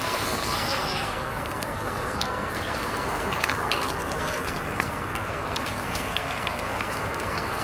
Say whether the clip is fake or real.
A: fake